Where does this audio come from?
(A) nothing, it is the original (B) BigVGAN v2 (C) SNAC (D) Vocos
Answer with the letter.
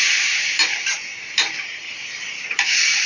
B